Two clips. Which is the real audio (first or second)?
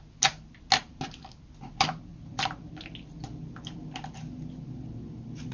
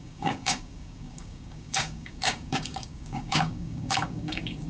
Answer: first